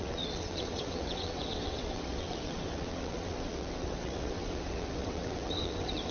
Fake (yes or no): yes